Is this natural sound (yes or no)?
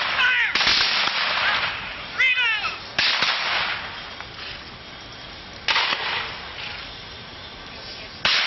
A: yes